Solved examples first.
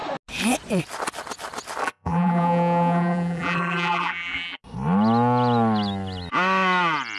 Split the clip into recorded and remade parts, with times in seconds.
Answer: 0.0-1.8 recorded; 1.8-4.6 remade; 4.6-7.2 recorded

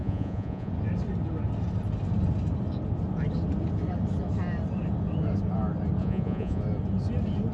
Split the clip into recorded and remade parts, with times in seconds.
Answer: 0.0-0.7 remade; 0.7-6.0 recorded; 6.0-6.6 remade; 6.6-7.5 recorded

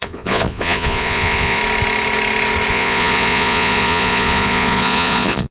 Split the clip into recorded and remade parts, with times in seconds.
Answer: 0.0-1.6 remade; 1.6-2.7 recorded; 2.7-5.5 remade